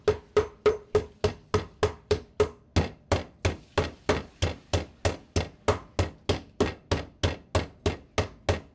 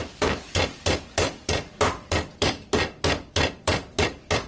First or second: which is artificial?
second